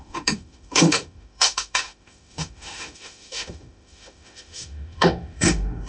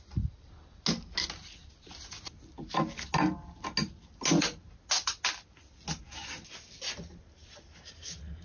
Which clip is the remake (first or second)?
first